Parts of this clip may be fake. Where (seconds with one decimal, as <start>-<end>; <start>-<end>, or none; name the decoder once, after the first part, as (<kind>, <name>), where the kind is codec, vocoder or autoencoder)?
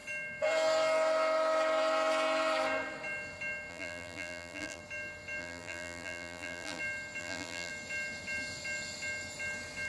3.7-4.8 (vocoder, BigVGAN v2); 5.4-6.8; 7.2-7.7